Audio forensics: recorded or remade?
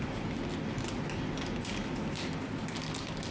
recorded